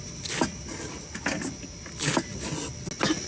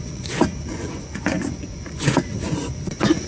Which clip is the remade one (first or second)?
second